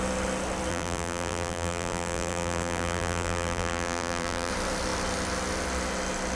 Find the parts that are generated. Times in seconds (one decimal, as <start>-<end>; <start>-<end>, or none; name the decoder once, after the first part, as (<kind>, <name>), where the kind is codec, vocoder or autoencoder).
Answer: 0.7-4.5 (vocoder, BigVGAN v2)